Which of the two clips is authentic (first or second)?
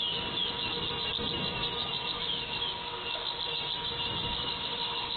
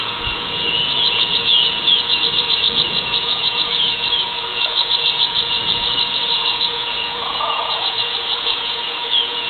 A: first